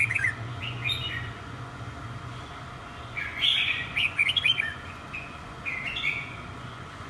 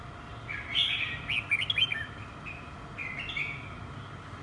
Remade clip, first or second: first